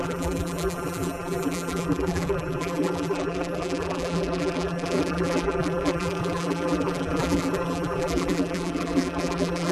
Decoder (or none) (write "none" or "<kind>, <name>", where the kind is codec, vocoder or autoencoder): vocoder, BigVGAN v2